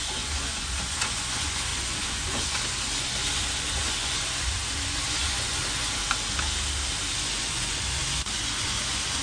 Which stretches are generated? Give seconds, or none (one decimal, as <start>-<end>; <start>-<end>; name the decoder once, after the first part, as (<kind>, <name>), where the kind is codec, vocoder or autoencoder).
0.0-6.0 (vocoder, Vocos); 7.2-9.2

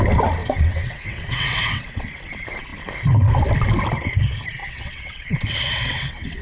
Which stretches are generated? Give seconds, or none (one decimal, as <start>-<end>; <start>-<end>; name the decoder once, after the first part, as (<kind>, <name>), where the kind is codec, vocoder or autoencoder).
0.4-2.1 (vocoder, WaveNeXt); 4.6-6.4

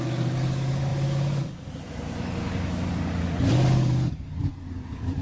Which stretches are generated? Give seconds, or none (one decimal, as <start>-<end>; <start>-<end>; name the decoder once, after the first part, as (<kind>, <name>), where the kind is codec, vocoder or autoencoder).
0.0-5.2 (codec, DAC)

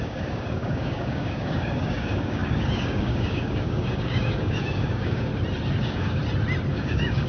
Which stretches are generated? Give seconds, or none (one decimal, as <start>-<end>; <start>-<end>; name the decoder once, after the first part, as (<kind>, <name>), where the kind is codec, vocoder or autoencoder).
0.0-5.3 (codec, DAC); 5.8-6.2; 6.7-7.3